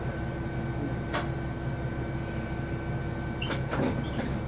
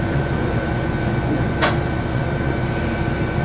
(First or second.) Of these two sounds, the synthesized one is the second